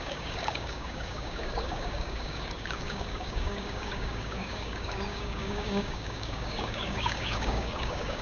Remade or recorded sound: remade